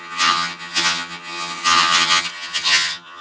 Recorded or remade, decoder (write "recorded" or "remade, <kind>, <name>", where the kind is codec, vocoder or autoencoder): remade, vocoder, HiFi-GAN